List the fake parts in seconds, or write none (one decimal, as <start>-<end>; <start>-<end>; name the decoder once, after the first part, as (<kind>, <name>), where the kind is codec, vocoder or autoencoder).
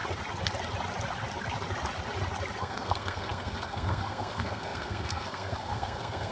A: 2.6-6.3 (codec, SNAC)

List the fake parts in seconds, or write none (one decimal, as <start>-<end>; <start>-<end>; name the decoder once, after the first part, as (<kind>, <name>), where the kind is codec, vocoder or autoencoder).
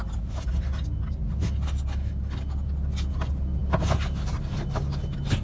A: none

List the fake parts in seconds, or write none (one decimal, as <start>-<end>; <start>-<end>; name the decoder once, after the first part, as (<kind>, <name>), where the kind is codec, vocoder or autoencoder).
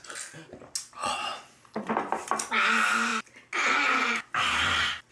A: 1.0-1.9 (vocoder, Vocos)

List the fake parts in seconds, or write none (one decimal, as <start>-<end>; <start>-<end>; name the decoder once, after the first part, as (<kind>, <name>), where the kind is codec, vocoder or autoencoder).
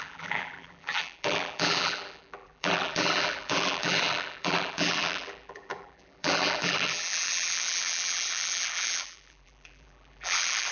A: 0.0-10.7 (vocoder, BigVGAN v2)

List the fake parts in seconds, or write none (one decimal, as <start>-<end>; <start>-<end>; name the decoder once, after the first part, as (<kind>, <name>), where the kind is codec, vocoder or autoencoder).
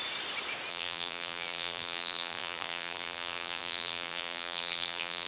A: 0.7-5.3 (vocoder, BigVGAN v2)